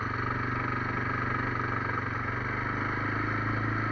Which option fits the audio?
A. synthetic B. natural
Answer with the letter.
B